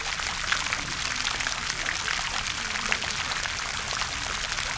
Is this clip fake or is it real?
real